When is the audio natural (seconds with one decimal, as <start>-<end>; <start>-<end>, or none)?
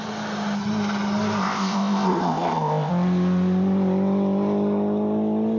0.0-1.4; 2.9-5.6